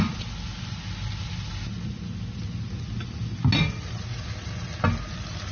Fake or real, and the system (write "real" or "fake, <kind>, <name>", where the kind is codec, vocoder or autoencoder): real